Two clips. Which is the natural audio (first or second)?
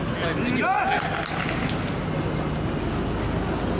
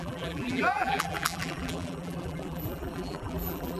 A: first